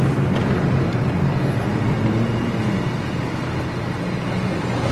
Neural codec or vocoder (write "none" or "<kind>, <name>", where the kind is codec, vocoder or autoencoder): none